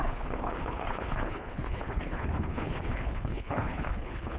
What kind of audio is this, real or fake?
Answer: fake